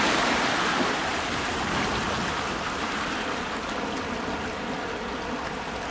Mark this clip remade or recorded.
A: recorded